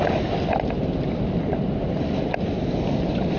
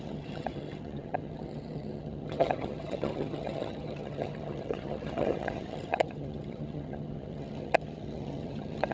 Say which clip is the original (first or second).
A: first